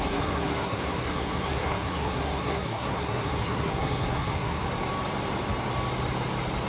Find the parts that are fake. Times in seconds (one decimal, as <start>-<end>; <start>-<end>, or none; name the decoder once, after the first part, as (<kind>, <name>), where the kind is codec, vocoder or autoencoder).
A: 0.0-4.6 (codec, SNAC)